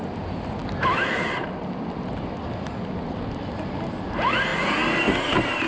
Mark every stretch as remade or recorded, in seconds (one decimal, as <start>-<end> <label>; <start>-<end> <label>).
0.0-5.7 recorded